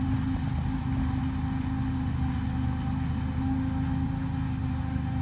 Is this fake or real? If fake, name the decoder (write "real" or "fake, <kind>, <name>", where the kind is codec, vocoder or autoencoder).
real